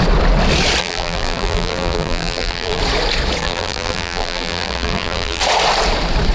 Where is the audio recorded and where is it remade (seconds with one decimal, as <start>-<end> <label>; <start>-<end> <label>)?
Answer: 0.0-0.8 recorded; 0.8-2.8 remade; 2.8-3.4 recorded; 3.4-5.4 remade; 5.4-6.3 recorded